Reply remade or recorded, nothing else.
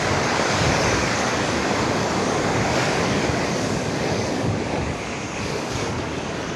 remade